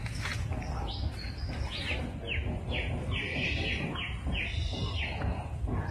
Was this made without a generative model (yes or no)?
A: yes